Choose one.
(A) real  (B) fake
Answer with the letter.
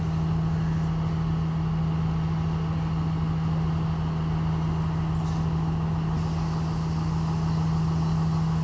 A